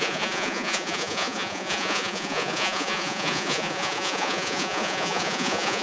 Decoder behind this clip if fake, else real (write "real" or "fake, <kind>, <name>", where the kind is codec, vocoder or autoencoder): fake, vocoder, Vocos